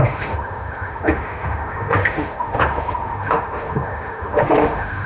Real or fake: fake